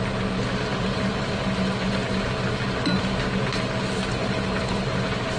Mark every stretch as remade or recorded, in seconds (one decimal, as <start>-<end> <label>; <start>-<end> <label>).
0.0-0.7 recorded; 0.7-1.4 remade; 1.4-4.1 recorded; 4.1-4.7 remade; 4.7-5.4 recorded